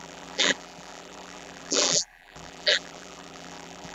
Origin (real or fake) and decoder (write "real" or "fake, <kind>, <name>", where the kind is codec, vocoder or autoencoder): fake, vocoder, BigVGAN v2